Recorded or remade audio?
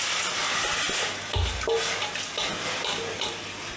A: recorded